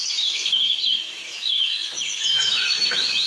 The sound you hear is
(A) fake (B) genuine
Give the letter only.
A